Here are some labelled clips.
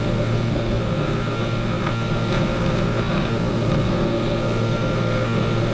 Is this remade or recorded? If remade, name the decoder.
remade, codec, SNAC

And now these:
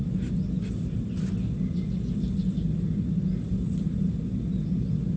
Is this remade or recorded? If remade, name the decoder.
recorded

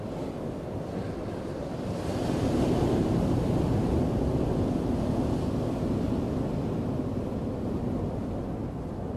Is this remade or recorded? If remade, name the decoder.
recorded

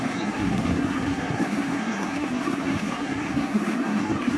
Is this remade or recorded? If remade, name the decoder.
remade, codec, SNAC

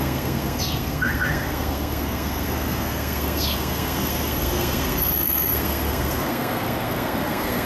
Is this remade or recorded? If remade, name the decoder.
remade, codec, SNAC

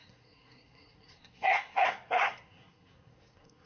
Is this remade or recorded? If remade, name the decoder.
remade, codec, SNAC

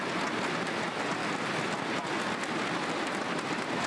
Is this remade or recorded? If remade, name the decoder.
recorded